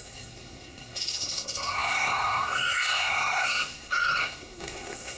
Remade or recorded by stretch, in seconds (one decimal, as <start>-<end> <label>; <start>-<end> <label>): 0.0-5.2 remade